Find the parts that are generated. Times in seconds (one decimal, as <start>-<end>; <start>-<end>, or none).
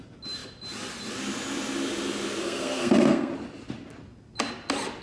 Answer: 2.4-3.3